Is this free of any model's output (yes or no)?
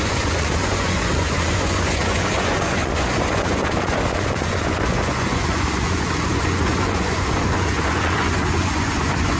no